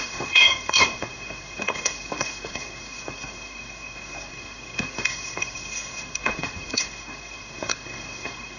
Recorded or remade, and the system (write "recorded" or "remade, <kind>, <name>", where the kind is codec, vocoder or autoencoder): remade, codec, SNAC